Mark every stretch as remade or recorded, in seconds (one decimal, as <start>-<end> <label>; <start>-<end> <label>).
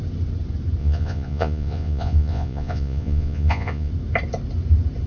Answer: 0.0-0.8 recorded; 0.8-3.9 remade; 3.9-5.1 recorded